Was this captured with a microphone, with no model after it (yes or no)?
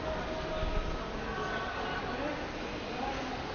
yes